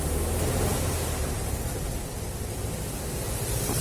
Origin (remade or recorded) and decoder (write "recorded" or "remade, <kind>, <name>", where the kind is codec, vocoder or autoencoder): recorded